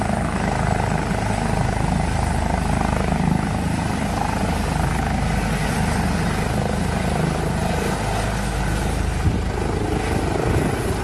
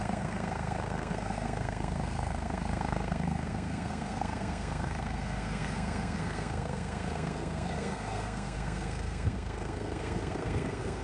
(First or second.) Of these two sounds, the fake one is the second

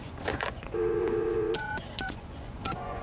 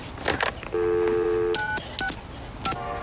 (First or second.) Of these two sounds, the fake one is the first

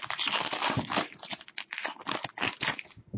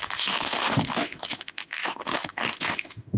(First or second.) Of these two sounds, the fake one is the second